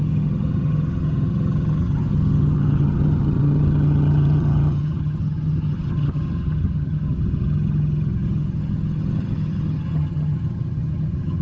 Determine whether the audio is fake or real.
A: fake